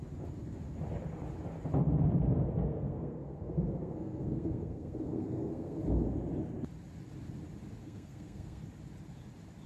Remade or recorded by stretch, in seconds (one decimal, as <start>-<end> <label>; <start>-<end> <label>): 0.0-2.7 recorded; 2.7-5.8 remade; 5.8-7.8 recorded; 7.8-8.6 remade; 8.6-9.7 recorded